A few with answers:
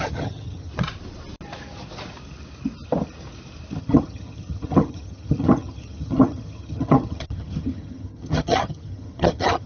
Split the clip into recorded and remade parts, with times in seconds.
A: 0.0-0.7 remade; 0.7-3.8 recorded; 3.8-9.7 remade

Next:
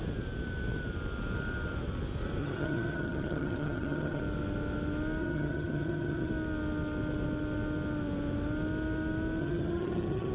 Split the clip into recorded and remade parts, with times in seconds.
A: 0.0-2.4 recorded; 2.4-4.2 remade; 4.2-5.2 recorded; 5.2-6.3 remade; 6.3-9.4 recorded; 9.4-10.3 remade

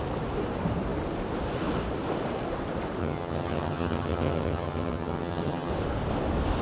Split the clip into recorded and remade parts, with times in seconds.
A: 0.0-3.0 recorded; 3.0-5.7 remade; 5.7-6.6 recorded

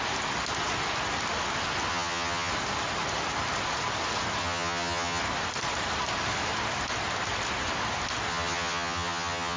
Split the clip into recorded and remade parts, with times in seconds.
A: 0.0-1.9 recorded; 1.9-2.5 remade; 2.5-4.4 recorded; 4.4-5.2 remade; 5.2-8.3 recorded; 8.3-9.6 remade

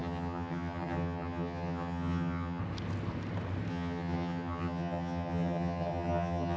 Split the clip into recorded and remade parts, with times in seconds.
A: 0.0-2.6 remade; 2.6-3.7 recorded; 3.7-6.6 remade

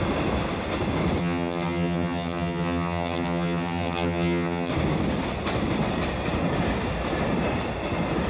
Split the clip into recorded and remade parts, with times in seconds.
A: 0.0-1.2 recorded; 1.2-4.7 remade; 4.7-8.3 recorded